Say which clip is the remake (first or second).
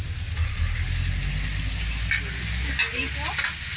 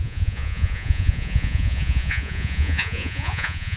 second